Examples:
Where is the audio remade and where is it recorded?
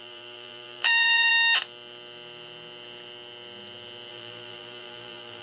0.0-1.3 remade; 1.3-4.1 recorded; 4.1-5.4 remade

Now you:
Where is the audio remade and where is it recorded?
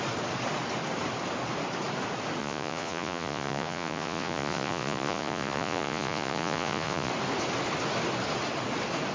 0.0-2.4 recorded; 2.4-7.1 remade; 7.1-9.1 recorded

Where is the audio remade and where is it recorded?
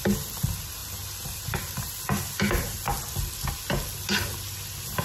0.0-5.0 recorded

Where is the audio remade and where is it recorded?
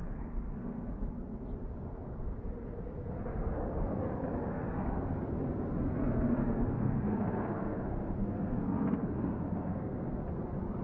0.0-0.9 remade; 0.9-4.5 recorded; 4.5-5.2 remade; 5.2-6.4 recorded; 6.4-10.2 remade; 10.2-10.8 recorded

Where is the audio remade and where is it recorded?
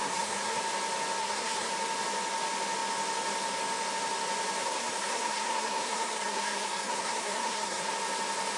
0.0-0.6 remade; 0.6-1.2 recorded; 1.2-1.7 remade; 1.7-4.6 recorded; 4.6-7.9 remade; 7.9-8.6 recorded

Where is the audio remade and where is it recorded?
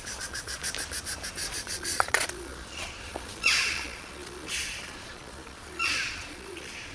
0.0-0.6 remade; 0.6-1.5 recorded; 1.5-6.9 remade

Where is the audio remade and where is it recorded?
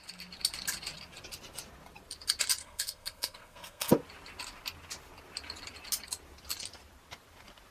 0.0-2.6 recorded; 2.6-3.9 remade; 3.9-7.7 recorded